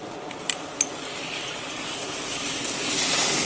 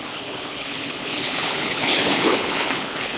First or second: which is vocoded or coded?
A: second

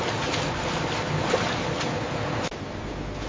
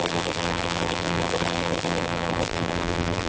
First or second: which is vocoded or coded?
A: second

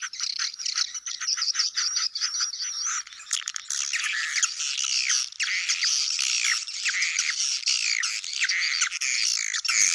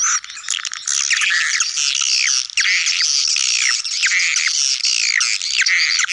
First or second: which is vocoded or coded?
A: first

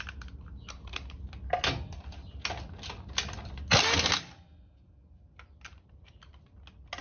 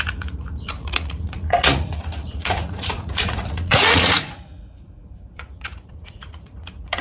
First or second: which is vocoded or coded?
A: second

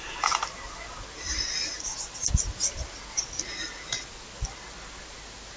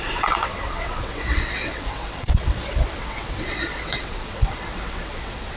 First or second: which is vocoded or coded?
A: second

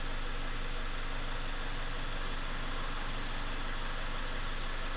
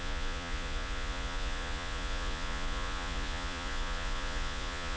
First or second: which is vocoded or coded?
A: second